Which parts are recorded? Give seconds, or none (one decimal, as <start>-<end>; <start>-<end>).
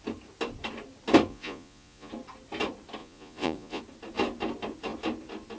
0.0-1.3; 2.1-3.0; 3.8-5.6